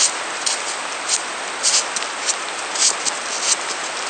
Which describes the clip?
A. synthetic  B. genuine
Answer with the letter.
B